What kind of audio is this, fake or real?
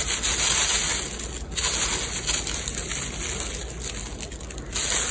real